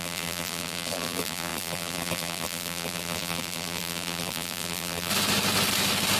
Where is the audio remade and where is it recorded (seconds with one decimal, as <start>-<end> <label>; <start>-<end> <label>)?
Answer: 0.0-5.1 remade; 5.1-6.2 recorded